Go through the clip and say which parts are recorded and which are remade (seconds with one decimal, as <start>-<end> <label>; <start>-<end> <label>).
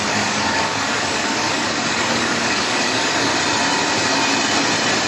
0.0-3.3 remade; 3.3-5.1 recorded